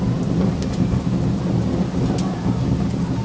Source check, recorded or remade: recorded